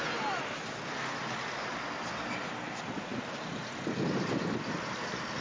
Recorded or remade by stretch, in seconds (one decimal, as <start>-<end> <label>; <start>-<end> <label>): 0.0-5.4 recorded